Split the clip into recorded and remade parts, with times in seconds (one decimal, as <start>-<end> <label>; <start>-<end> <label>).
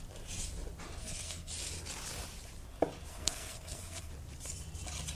0.0-1.0 recorded; 1.0-1.5 remade; 1.5-3.1 recorded; 3.1-4.1 remade; 4.1-5.1 recorded